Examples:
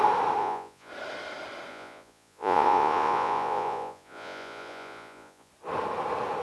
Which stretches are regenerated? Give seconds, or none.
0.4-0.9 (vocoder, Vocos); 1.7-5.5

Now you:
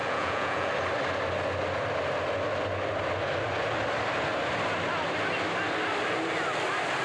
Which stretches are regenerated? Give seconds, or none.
0.0-0.7 (vocoder, Vocos)

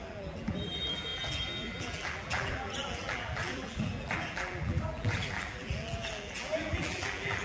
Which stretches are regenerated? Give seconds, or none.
0.0-7.4 (vocoder, BigVGAN v2)

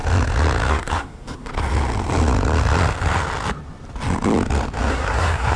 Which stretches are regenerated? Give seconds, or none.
0.7-1.5 (codec, SNAC); 4.9-5.6